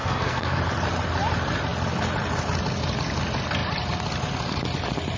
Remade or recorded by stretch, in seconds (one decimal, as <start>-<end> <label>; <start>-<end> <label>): 0.0-0.6 remade; 0.6-5.2 recorded